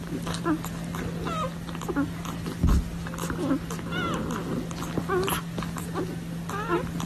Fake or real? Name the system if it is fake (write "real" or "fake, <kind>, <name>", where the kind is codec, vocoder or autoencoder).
real